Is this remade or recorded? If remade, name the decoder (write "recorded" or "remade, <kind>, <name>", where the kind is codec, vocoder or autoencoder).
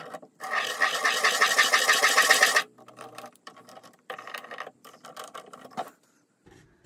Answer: remade, vocoder, BigVGAN v2